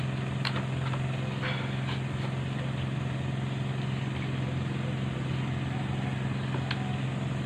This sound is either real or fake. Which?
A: real